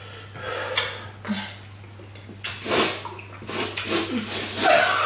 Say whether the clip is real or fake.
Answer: real